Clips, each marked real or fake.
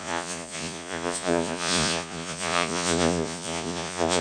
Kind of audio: fake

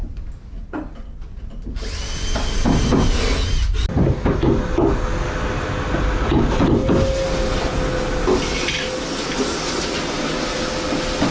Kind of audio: real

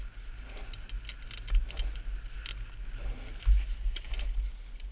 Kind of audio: real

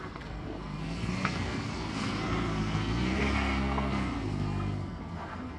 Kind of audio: fake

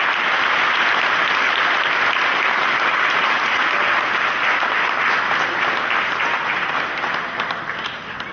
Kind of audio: real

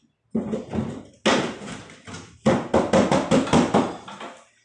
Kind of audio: real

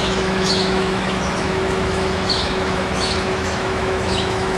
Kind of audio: fake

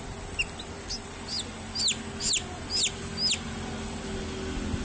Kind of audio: real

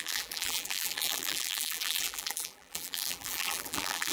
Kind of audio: fake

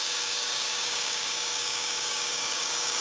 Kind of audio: fake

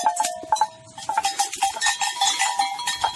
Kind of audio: real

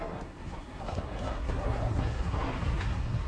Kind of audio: fake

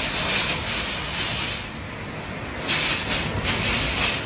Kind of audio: real